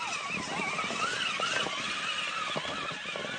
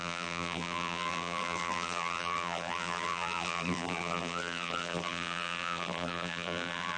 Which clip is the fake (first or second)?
second